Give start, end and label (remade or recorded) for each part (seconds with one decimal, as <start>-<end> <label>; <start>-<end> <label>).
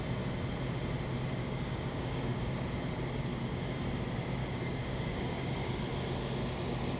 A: 0.0-1.4 recorded; 1.4-2.5 remade; 2.5-3.3 recorded; 3.3-3.8 remade; 3.8-4.4 recorded; 4.4-5.7 remade; 5.7-7.0 recorded